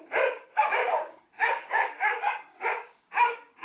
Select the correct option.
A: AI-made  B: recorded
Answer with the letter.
A